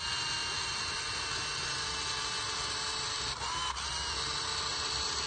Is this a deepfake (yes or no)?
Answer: no